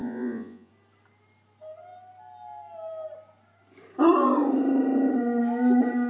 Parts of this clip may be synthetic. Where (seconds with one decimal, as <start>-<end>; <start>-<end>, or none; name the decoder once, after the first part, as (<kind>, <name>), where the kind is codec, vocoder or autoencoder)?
0.0-0.7 (vocoder, Vocos)